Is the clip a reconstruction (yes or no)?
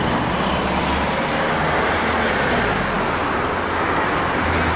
no